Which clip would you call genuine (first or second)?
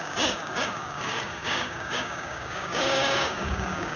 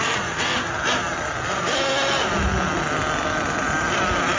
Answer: second